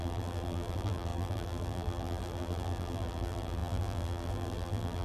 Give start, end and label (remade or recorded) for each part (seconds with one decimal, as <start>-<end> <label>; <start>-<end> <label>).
0.0-5.0 remade